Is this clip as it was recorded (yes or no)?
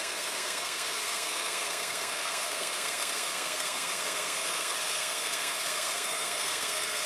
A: no